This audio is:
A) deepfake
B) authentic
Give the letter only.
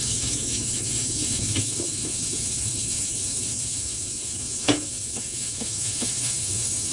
A